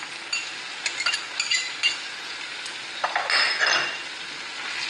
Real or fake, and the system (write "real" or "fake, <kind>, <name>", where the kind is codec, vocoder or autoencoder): real